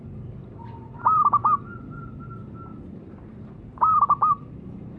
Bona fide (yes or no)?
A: yes